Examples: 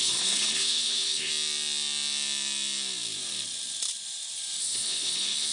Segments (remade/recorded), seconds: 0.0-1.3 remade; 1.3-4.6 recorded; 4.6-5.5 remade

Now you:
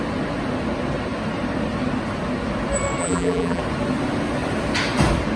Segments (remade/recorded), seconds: 0.0-3.0 recorded; 3.0-3.6 remade; 3.6-5.4 recorded

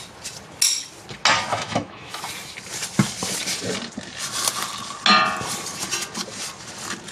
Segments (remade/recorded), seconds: 0.0-1.5 recorded; 1.5-2.2 remade; 2.2-7.1 recorded